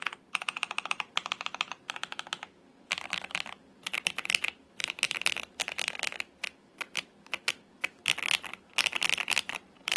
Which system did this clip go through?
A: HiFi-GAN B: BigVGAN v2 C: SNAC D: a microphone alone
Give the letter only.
D